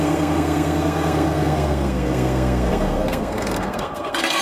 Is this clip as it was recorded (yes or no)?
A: no